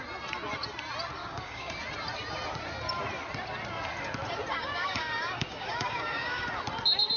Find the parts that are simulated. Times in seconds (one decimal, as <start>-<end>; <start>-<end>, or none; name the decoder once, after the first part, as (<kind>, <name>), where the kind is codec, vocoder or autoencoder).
1.2-1.8 (codec, DAC); 4.5-6.6